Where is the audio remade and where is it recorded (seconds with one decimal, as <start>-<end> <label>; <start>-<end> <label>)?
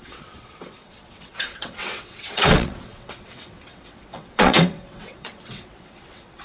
0.0-6.4 remade